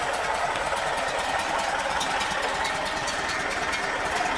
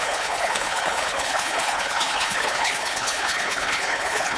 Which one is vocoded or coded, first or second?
second